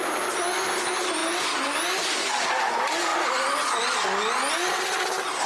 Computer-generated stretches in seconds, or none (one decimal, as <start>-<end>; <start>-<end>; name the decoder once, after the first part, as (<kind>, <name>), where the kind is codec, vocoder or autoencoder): none